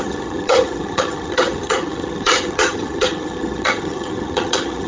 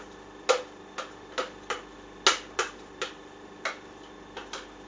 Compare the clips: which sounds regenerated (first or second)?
first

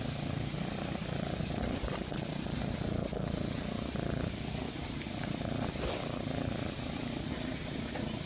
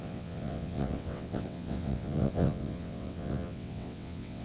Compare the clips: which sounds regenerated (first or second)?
second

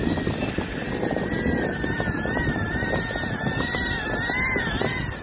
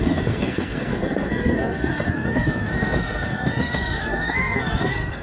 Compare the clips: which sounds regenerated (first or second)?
second